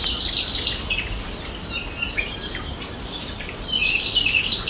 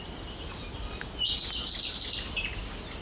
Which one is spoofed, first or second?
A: first